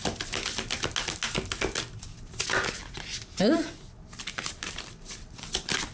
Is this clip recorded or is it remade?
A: recorded